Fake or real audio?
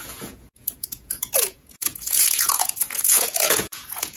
fake